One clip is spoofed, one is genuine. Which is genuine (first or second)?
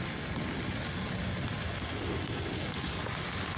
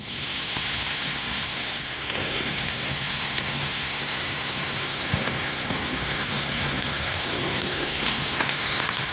first